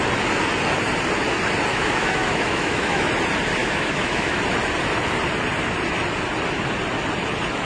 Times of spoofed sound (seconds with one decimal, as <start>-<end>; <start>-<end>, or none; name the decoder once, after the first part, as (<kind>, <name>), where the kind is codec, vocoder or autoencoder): 1.7-3.1 (autoencoder, DAC-VAE); 3.6-4.4